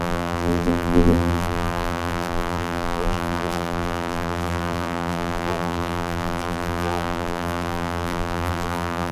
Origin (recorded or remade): remade